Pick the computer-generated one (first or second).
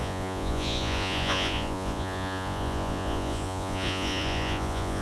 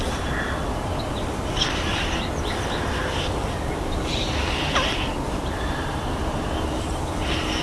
first